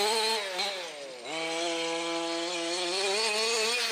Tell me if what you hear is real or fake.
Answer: real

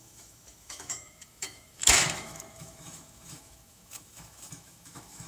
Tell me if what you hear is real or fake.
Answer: fake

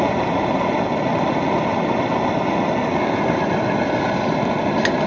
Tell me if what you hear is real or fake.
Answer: real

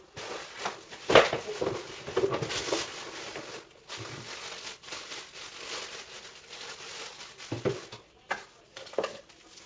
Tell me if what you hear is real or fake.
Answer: real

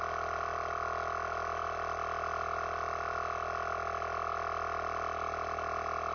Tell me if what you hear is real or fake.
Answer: real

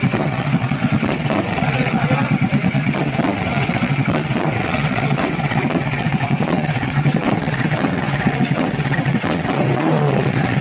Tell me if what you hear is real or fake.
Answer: fake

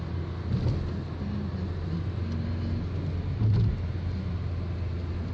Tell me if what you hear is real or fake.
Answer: real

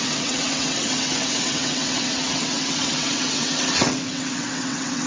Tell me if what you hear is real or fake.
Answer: fake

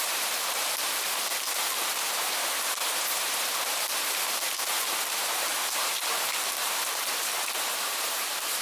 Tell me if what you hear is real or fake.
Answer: fake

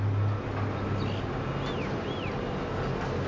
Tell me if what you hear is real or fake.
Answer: real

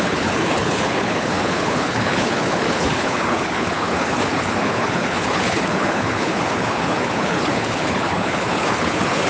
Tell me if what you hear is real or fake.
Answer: fake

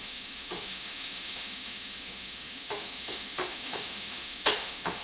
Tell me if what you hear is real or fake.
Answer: fake